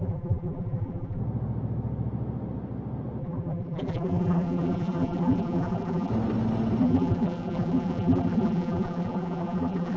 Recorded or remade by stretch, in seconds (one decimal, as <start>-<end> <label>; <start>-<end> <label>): 0.0-1.2 remade; 1.2-3.2 recorded; 3.2-6.1 remade; 6.1-6.8 recorded; 6.8-10.0 remade